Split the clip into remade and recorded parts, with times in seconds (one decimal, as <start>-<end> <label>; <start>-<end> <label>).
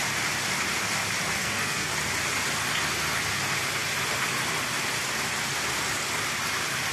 0.0-1.4 recorded; 1.4-1.9 remade; 1.9-6.9 recorded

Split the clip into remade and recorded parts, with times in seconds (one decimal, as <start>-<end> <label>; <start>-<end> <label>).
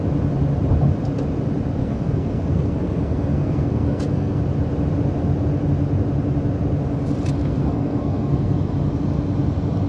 0.0-1.8 recorded; 1.8-4.4 remade; 4.4-7.4 recorded; 7.4-8.6 remade; 8.6-9.9 recorded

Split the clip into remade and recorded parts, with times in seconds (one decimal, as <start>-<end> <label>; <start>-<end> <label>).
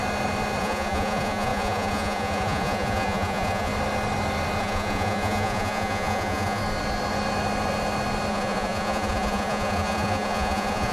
0.0-0.6 recorded; 0.6-3.7 remade; 3.7-4.6 recorded; 4.6-6.6 remade; 6.6-8.3 recorded; 8.3-10.9 remade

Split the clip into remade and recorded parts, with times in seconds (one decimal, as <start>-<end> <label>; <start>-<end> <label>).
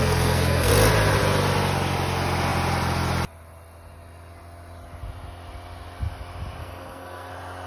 0.0-0.7 remade; 0.7-6.6 recorded; 6.6-7.3 remade; 7.3-7.7 recorded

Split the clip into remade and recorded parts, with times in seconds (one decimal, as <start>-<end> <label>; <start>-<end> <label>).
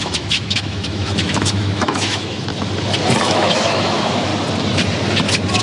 0.0-2.5 remade; 2.5-3.2 recorded; 3.2-4.3 remade; 4.3-5.6 recorded